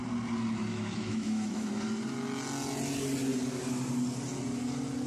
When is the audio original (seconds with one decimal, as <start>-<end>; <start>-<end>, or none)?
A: 0.0-0.7; 1.7-5.1